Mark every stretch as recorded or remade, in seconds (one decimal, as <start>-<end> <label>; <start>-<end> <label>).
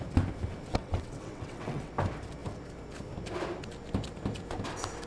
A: 0.0-0.7 recorded; 0.7-1.9 remade; 1.9-5.1 recorded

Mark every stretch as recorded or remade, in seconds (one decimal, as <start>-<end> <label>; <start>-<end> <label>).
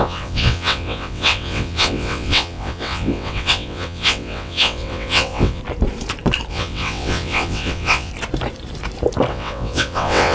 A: 0.0-5.6 remade; 5.6-6.5 recorded; 6.5-8.1 remade; 8.1-9.3 recorded; 9.3-10.3 remade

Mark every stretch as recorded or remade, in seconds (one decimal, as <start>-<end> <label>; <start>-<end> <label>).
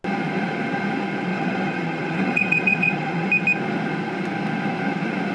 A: 0.0-1.3 recorded; 1.3-3.3 remade; 3.3-5.3 recorded